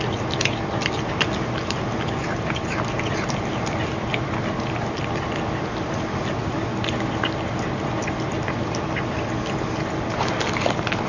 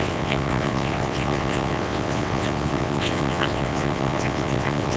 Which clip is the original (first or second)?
first